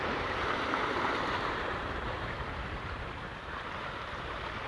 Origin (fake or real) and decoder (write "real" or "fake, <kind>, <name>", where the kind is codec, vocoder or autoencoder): fake, vocoder, BigVGAN v2